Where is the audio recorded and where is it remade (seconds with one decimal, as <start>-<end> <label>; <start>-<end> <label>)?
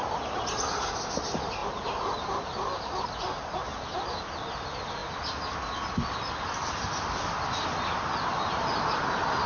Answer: 0.0-9.5 recorded